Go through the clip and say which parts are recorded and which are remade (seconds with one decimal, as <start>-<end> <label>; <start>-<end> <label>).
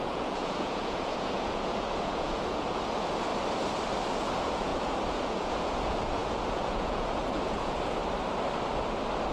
0.0-3.3 remade; 3.3-4.1 recorded; 4.1-8.0 remade; 8.0-9.3 recorded